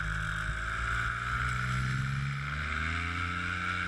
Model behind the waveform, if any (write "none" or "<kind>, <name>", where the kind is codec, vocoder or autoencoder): none